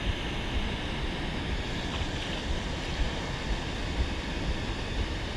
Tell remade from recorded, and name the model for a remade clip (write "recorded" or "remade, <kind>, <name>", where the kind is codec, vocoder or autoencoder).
recorded